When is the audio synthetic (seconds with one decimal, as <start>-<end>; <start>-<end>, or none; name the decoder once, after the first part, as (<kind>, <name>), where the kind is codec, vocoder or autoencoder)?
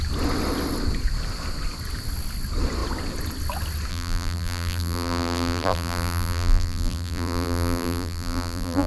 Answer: 3.9-8.9 (vocoder, BigVGAN v2)